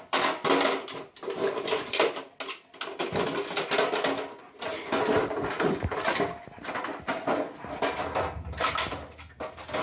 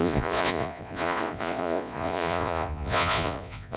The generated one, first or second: second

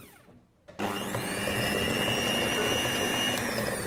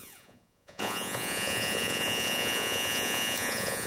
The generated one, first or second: second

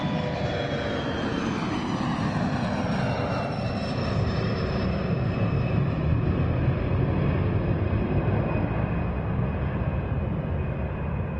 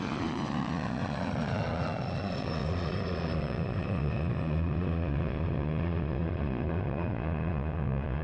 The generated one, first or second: second